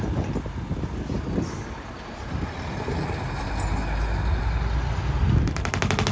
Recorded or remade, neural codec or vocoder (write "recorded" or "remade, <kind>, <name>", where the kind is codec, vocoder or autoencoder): recorded